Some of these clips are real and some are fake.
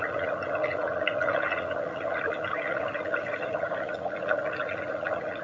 fake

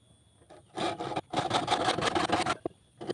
real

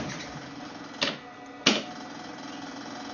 real